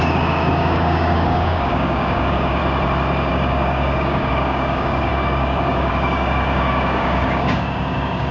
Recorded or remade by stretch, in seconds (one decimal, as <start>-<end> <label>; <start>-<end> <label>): 0.0-2.6 remade; 2.6-3.3 recorded; 3.3-8.3 remade